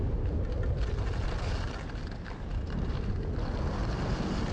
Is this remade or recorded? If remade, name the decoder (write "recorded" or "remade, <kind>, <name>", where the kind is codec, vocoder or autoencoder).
recorded